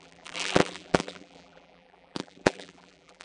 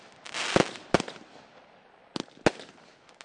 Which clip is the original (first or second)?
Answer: second